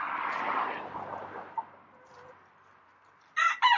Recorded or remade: recorded